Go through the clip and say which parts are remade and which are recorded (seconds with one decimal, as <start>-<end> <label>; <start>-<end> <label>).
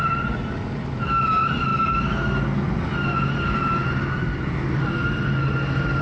0.0-6.0 recorded